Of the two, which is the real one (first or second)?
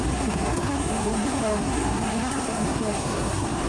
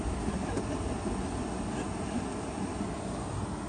second